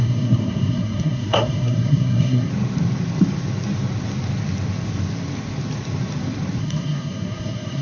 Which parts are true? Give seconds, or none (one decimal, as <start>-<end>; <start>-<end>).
2.5-6.6